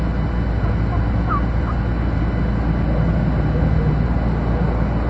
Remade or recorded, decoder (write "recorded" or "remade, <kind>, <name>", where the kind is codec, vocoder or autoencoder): recorded